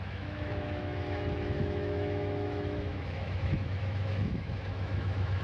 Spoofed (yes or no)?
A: yes